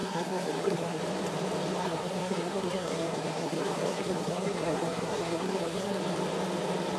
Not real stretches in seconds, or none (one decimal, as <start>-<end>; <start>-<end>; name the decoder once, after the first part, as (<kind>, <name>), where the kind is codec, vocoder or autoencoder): 0.0-1.0 (codec, SNAC); 1.8-6.0